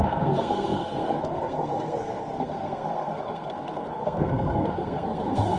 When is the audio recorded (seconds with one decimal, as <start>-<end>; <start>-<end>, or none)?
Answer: none